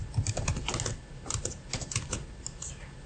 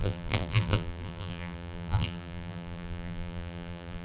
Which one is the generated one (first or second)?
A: second